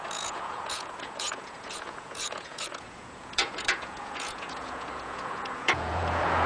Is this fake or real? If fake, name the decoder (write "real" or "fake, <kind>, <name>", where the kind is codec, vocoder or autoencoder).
fake, vocoder, Vocos